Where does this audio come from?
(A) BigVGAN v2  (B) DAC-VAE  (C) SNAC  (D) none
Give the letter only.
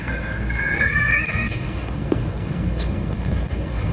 C